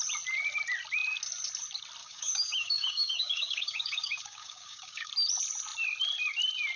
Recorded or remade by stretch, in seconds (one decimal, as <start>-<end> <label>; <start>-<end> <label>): 0.0-2.0 recorded; 2.0-5.1 remade; 5.1-6.8 recorded